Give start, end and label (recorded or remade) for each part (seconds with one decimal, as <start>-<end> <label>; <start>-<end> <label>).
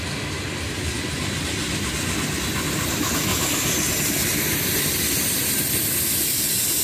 0.0-6.8 recorded